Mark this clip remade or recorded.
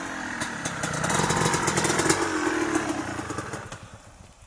recorded